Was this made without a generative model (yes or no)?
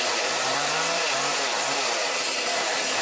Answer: no